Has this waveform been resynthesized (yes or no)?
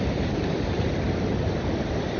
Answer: no